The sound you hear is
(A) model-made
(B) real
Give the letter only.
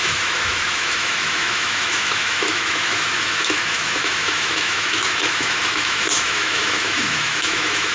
A